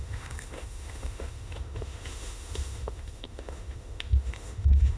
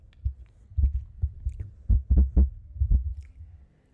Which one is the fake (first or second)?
first